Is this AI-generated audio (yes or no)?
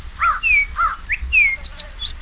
no